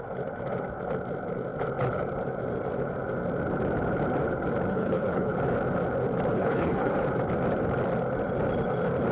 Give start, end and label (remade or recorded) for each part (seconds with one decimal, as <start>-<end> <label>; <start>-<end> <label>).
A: 0.0-4.7 recorded; 4.7-5.3 remade; 5.3-6.3 recorded; 6.3-6.9 remade; 6.9-9.1 recorded